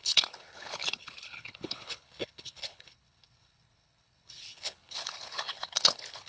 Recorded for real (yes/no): no